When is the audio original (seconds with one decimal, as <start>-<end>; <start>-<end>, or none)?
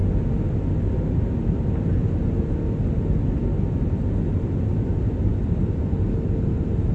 0.0-6.9